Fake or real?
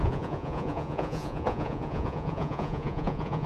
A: fake